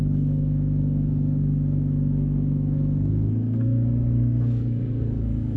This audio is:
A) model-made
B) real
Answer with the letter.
A